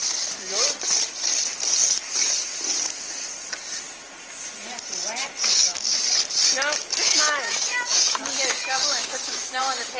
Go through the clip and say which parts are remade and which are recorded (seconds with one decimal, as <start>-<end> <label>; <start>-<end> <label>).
0.0-5.5 recorded; 5.5-6.0 remade; 6.0-6.8 recorded; 6.8-9.6 remade; 9.6-10.0 recorded